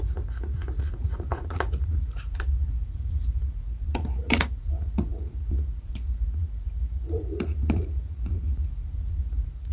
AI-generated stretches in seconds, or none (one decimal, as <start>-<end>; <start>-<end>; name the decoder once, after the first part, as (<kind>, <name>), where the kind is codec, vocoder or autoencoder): 0.0-9.7 (vocoder, Vocos)